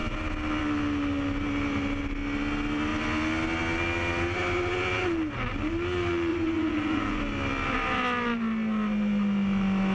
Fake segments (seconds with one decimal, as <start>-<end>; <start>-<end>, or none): 6.3-7.2